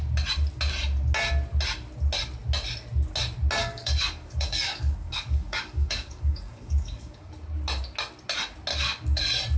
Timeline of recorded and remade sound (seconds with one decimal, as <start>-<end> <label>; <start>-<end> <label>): 0.0-3.6 recorded; 3.6-7.3 remade; 7.3-8.7 recorded; 8.7-9.2 remade; 9.2-9.6 recorded